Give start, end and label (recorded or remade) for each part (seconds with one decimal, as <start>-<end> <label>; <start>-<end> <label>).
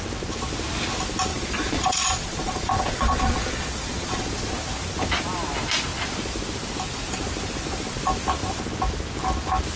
0.0-1.3 recorded; 1.3-4.5 remade; 4.5-9.8 recorded